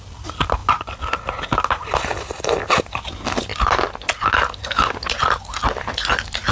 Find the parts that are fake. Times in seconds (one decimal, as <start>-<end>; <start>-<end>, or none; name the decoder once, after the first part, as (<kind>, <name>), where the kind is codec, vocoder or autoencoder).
none

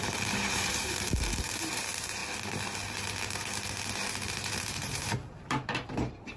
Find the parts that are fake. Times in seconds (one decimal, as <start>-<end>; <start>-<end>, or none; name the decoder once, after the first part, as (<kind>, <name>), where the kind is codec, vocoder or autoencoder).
0.0-2.2 (vocoder, BigVGAN v2); 4.3-6.4

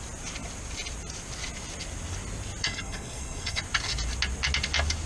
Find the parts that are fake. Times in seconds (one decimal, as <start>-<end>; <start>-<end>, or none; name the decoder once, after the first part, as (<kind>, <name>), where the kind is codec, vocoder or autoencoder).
2.6-3.6 (codec, SNAC)

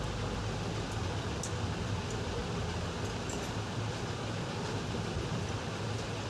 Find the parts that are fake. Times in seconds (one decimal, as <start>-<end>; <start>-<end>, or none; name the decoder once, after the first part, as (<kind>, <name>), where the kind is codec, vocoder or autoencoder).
none

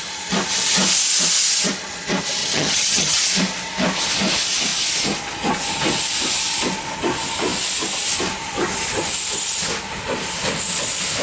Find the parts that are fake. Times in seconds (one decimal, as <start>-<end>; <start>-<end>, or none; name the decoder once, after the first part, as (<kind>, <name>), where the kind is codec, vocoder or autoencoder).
2.4-3.2 (vocoder, HiFi-GAN)

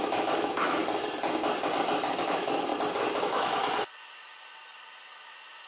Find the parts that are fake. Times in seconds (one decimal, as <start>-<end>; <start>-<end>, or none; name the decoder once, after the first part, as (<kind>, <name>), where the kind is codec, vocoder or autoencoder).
0.0-0.8 (autoencoder, DAC-VAE); 2.2-2.7; 3.2-3.6